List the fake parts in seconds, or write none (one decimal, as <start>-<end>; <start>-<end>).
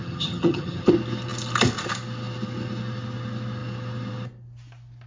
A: 0.0-0.9